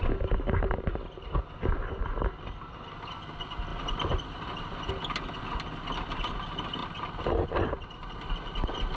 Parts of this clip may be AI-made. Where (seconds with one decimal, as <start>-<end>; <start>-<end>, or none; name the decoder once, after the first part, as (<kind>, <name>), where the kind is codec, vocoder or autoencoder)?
3.7-4.9 (vocoder, BigVGAN v2)